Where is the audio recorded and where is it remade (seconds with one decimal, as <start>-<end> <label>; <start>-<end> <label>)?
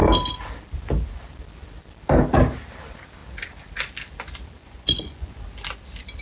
0.0-4.6 recorded; 4.6-5.4 remade; 5.4-6.2 recorded